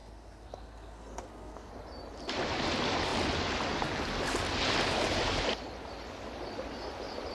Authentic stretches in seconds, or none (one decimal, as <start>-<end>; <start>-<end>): 1.7-7.3